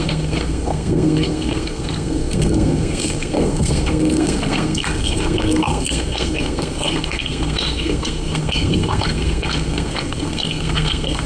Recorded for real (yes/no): no